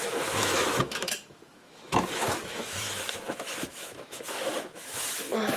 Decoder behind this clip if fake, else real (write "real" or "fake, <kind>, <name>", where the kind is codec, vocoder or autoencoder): fake, autoencoder, DAC-VAE